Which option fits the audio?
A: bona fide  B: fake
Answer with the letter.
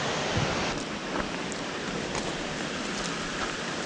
A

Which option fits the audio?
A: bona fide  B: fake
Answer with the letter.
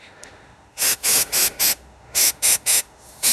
B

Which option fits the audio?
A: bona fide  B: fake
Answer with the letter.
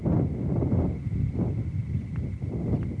A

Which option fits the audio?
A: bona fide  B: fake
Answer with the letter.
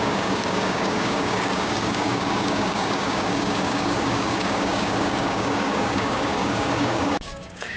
B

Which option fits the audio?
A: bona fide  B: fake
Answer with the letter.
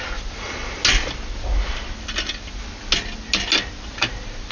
A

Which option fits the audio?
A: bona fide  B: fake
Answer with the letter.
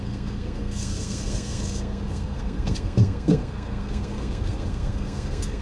B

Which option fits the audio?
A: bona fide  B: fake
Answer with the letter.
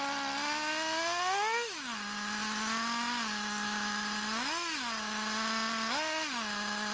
A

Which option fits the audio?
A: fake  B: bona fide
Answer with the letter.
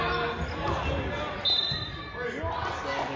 B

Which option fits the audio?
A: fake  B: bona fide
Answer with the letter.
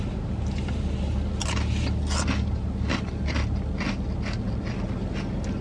B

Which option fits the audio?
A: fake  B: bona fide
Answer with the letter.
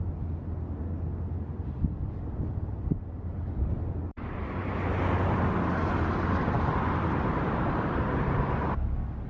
B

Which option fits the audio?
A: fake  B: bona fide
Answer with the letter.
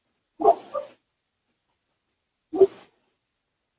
B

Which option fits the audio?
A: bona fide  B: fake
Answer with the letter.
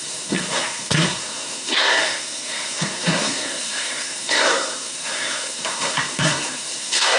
B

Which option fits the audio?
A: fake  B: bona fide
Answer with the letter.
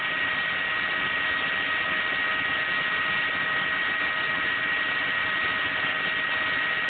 B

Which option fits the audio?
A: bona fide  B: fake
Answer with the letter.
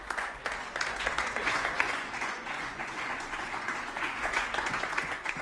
B